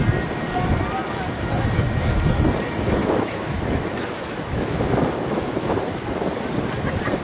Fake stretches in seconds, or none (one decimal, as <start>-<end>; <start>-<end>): 3.0-5.8